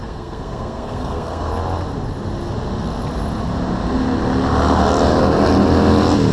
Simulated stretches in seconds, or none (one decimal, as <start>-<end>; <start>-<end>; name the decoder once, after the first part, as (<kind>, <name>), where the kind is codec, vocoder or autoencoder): 0.0-1.5 (codec, SNAC)